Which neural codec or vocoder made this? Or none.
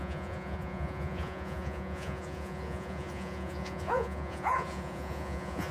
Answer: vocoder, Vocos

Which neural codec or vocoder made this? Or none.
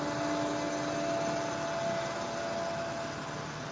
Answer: none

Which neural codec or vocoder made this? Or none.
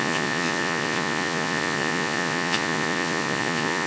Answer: vocoder, Vocos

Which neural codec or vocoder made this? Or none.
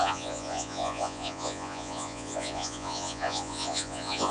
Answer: vocoder, Vocos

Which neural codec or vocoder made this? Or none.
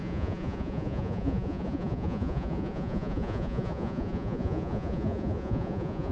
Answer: vocoder, Vocos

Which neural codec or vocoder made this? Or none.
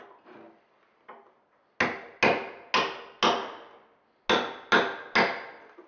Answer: none